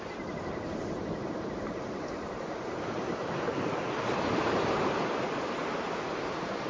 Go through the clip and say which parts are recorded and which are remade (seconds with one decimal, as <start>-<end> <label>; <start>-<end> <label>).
0.0-5.6 remade; 5.6-6.1 recorded; 6.1-6.7 remade